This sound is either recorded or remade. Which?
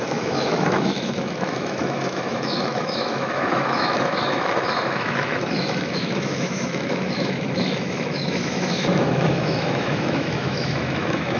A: remade